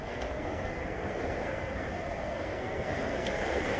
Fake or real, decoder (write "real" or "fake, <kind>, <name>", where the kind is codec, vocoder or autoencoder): fake, codec, SNAC